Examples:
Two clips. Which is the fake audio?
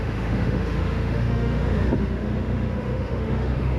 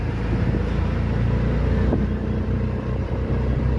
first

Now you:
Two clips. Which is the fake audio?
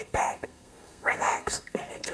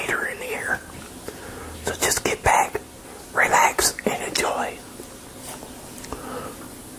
first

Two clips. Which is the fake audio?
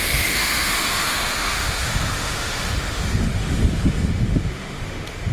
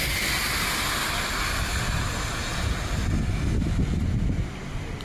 first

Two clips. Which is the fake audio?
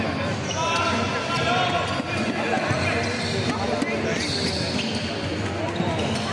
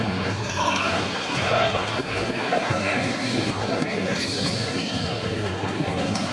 second